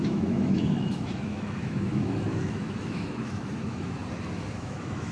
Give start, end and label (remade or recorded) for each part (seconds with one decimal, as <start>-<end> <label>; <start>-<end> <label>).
0.0-4.0 remade; 4.0-4.5 recorded; 4.5-5.1 remade